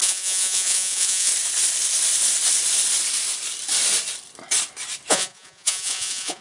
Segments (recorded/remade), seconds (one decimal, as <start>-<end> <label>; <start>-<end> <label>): 0.0-1.3 remade; 1.3-5.1 recorded; 5.1-6.4 remade